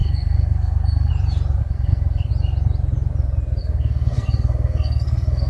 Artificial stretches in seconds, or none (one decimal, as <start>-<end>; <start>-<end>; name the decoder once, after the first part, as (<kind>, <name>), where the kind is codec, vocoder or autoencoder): 0.0-1.1 (codec, SNAC); 1.6-2.3; 3.6-5.5